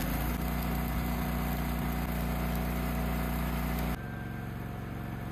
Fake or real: real